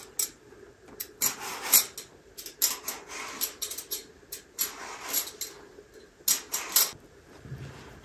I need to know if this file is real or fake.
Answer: real